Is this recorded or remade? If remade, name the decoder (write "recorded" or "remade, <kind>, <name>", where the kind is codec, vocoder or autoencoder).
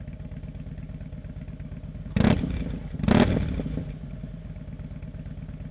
recorded